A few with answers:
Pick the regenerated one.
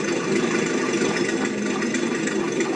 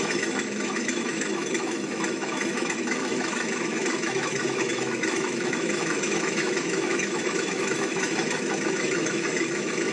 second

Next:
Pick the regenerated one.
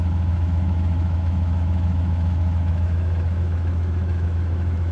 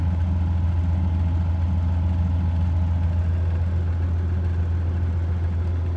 first